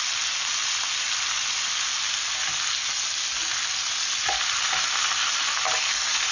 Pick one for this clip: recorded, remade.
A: recorded